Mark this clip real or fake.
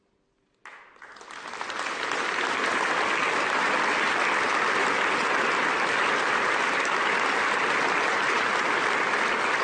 real